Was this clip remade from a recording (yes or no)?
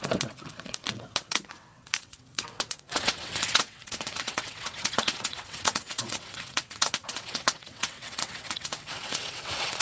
yes